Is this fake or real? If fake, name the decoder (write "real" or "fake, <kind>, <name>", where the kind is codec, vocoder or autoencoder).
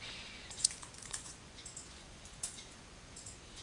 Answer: fake, vocoder, Vocos